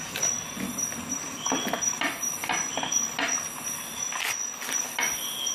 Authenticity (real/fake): real